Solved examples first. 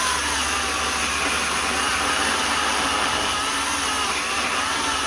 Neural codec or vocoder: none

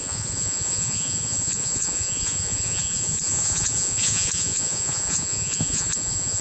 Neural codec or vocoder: vocoder, Vocos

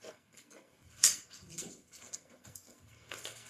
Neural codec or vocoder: codec, SNAC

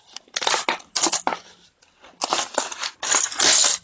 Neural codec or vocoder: none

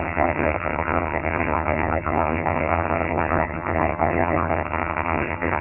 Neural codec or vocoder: vocoder, HiFi-GAN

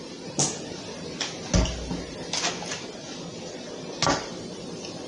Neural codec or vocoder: none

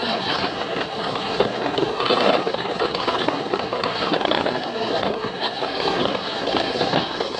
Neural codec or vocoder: codec, SNAC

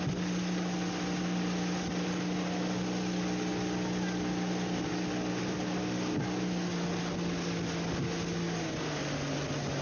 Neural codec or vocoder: none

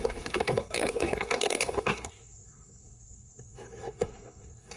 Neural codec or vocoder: codec, SNAC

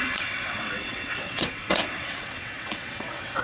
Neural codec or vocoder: vocoder, WaveNeXt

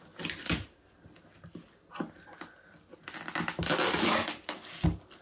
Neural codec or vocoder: none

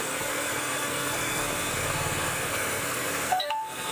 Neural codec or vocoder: codec, SNAC